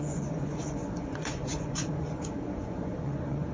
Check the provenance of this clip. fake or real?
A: fake